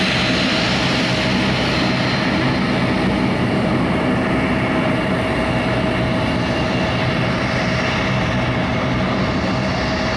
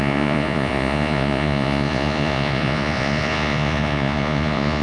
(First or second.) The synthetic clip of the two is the second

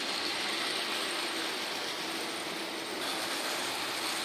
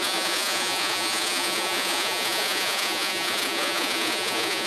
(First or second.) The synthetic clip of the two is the second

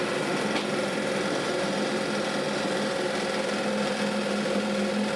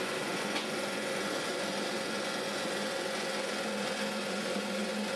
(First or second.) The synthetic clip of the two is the second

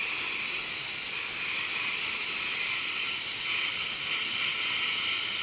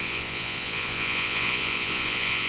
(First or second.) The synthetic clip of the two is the second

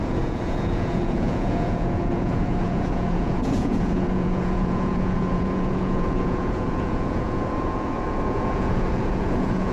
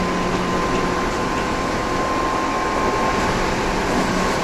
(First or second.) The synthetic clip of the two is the first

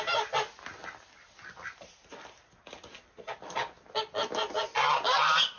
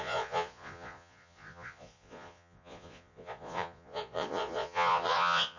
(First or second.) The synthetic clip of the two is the second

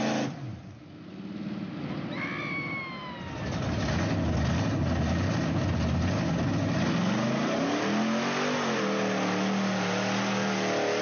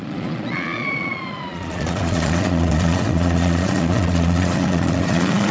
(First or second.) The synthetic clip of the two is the second